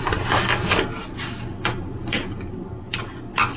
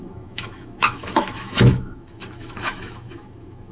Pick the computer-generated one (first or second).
second